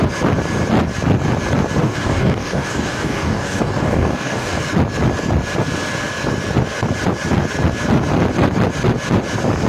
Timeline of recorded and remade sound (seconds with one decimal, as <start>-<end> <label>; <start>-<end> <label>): 0.0-1.8 recorded; 1.8-4.6 remade; 4.6-9.7 recorded